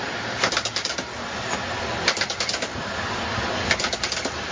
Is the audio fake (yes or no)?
no